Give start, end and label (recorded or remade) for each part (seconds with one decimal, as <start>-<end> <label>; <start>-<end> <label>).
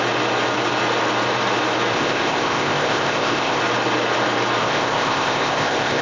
0.0-1.9 recorded; 1.9-3.6 remade; 3.6-4.6 recorded; 4.6-6.0 remade